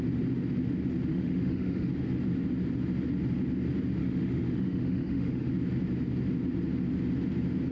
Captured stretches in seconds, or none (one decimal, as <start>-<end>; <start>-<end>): 0.0-1.1; 1.9-4.0; 5.5-7.7